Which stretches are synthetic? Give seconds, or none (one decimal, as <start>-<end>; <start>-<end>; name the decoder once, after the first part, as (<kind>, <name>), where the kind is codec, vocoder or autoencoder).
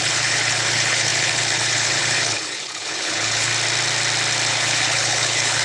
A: 0.0-3.5 (codec, HILCodec); 4.5-5.6